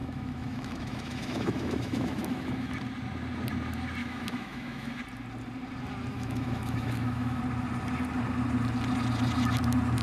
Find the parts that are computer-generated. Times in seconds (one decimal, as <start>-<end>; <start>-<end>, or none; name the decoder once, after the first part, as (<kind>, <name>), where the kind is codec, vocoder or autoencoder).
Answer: 0.0-2.7 (autoencoder, DAC-VAE); 4.0-5.0; 6.1-7.4